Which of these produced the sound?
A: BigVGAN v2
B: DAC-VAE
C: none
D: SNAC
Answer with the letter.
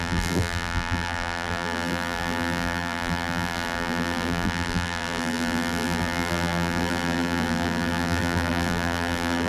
A